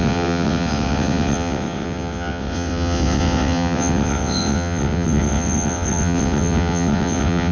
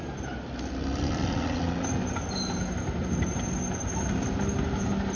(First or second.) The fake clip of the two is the first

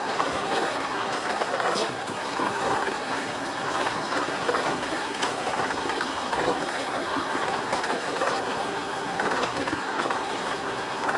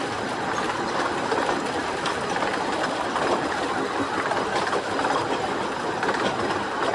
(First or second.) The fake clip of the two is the first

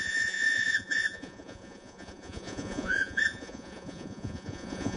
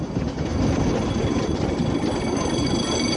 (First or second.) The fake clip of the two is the first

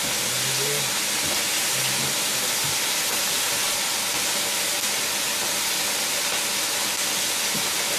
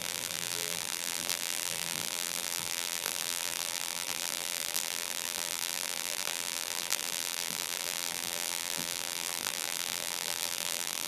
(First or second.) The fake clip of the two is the second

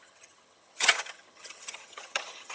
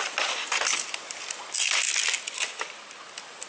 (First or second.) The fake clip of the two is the first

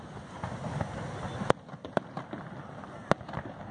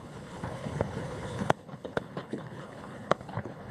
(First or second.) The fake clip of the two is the second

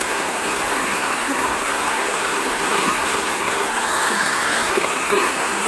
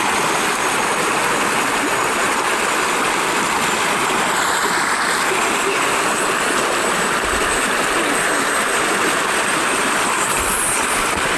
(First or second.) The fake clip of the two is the first